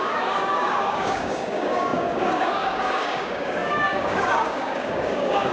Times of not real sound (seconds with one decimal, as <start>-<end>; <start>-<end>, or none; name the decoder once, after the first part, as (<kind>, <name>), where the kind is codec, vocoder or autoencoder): 0.0-5.5 (codec, DAC)